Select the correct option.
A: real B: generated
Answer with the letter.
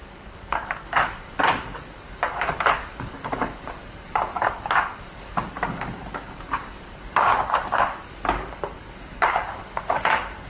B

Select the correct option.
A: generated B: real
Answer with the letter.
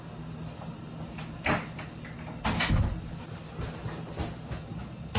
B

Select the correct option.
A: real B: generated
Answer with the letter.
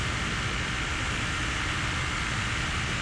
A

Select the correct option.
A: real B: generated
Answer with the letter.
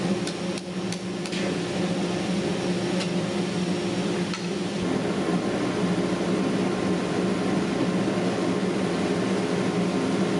A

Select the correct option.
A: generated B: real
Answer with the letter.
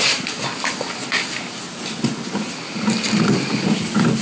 B